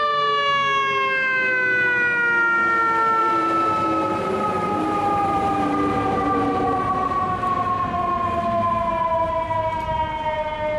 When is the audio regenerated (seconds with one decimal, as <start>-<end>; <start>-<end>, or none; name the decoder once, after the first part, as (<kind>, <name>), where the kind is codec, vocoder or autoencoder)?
3.2-7.2 (vocoder, BigVGAN v2)